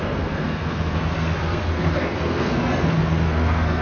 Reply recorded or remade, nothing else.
remade